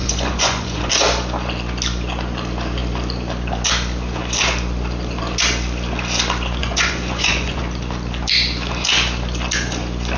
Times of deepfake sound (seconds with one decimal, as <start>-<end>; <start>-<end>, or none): 0.0-0.9; 6.6-7.6